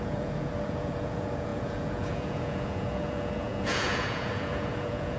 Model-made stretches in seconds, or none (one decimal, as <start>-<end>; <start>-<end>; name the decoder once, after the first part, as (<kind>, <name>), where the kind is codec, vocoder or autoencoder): 0.0-5.2 (vocoder, Vocos)